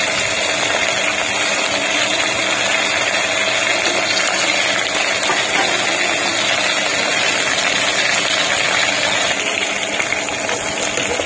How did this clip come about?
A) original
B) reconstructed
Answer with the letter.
A